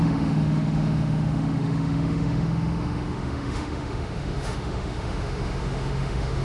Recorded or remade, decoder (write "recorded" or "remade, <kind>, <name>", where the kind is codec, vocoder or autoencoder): remade, autoencoder, DAC-VAE